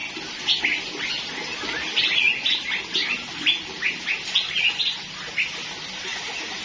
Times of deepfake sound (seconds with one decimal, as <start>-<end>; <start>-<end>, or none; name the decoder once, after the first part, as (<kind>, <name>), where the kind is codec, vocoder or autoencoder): none